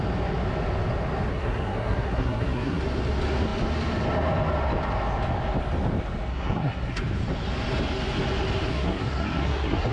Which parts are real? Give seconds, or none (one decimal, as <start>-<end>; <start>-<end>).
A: 0.0-1.3; 2.8-6.3; 7.0-8.7